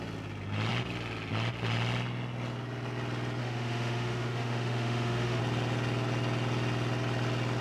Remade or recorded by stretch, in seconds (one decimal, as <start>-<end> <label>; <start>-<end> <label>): 0.0-3.4 recorded; 3.4-5.4 remade; 5.4-7.6 recorded